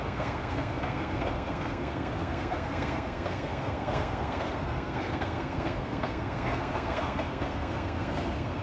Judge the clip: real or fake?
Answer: fake